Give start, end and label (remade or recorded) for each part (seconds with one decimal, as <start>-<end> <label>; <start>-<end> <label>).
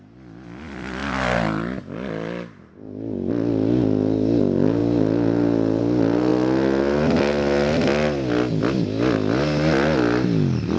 0.0-10.8 recorded